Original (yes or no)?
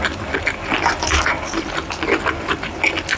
yes